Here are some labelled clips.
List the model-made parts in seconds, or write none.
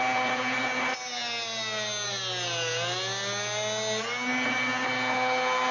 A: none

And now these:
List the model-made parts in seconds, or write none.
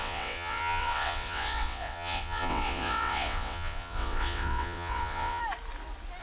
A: 0.0-5.4 (vocoder, WaveNeXt)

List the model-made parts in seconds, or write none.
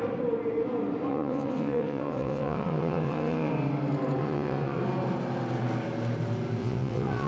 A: 1.1-3.5 (vocoder, WaveNeXt); 4.2-4.8; 6.6-7.3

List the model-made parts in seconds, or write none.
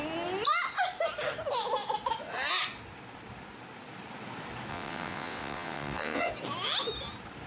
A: 4.7-6.3 (vocoder, WaveNeXt)